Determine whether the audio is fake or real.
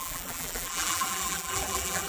fake